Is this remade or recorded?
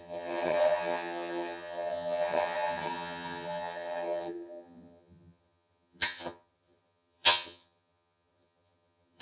remade